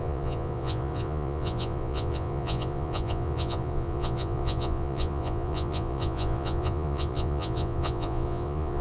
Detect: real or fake fake